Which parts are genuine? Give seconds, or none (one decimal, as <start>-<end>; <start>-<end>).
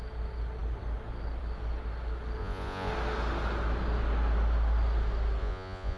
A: 0.0-2.4; 2.9-5.4